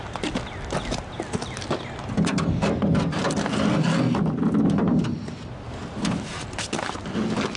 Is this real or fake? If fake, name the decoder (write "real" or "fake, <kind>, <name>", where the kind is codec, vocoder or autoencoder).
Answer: real